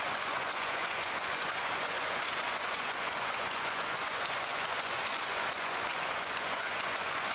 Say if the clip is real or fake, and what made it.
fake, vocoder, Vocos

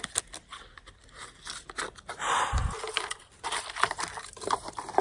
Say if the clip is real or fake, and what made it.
real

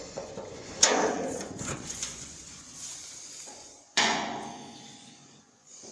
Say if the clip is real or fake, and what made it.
fake, vocoder, Vocos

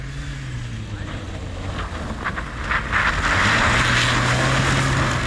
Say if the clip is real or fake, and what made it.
real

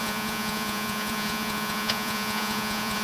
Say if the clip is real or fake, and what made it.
fake, vocoder, Vocos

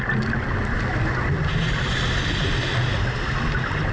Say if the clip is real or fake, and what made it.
real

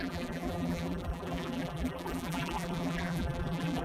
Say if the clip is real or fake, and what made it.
fake, vocoder, BigVGAN v2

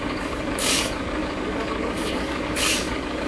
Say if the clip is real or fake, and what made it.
fake, codec, DAC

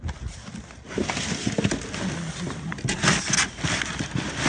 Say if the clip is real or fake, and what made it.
real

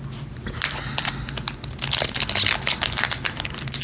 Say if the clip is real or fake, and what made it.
real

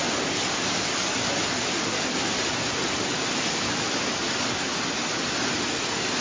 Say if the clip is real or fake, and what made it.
real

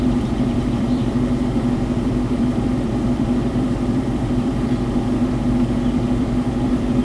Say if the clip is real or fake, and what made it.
fake, vocoder, BigVGAN v2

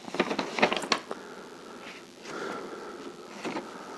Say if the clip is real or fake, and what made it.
real